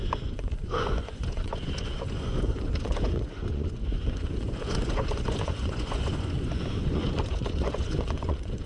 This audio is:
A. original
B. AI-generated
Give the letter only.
B